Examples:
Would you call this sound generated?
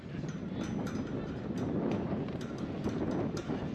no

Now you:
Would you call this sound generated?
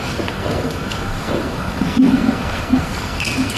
yes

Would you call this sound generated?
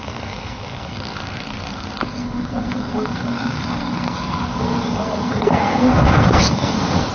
yes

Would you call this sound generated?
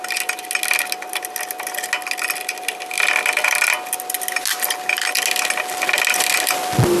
no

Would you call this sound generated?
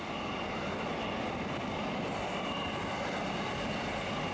no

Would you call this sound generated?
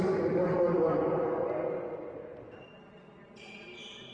no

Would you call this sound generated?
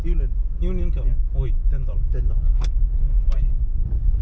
no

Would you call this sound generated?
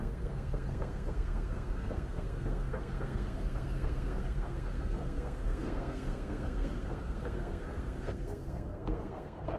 yes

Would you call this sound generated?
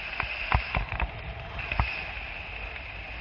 no